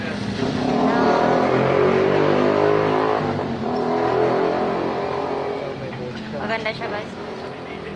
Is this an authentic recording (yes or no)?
yes